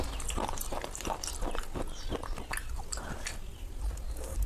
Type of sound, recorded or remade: recorded